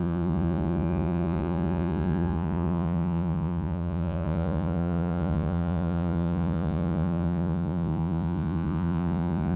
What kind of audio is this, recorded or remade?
remade